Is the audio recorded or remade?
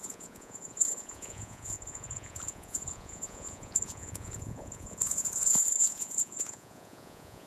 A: remade